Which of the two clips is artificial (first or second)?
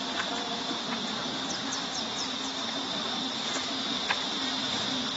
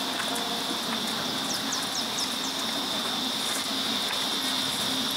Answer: first